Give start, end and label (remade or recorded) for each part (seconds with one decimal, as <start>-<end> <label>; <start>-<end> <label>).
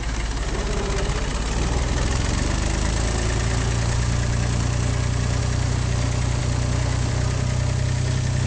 0.0-8.5 recorded